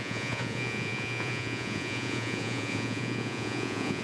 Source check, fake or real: fake